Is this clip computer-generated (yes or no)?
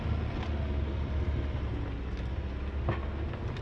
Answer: no